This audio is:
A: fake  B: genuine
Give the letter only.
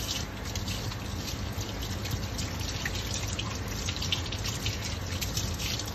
B